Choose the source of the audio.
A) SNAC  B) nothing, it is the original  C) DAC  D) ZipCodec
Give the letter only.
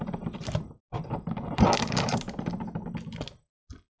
B